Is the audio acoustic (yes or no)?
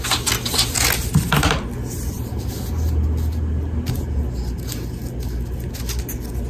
yes